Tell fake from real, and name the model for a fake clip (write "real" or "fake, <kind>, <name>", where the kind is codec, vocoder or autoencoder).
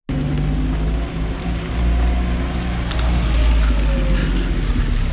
real